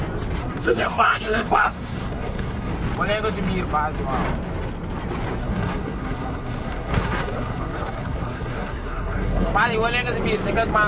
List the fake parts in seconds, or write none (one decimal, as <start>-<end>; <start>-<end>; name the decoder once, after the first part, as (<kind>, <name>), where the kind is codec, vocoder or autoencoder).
0.4-2.7 (codec, SNAC); 5.4-9.5